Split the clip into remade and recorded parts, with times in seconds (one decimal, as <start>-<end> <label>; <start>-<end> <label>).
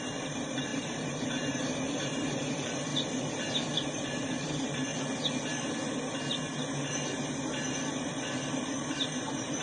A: 0.0-2.9 remade; 2.9-3.5 recorded; 3.5-4.9 remade; 4.9-8.5 recorded; 8.5-9.6 remade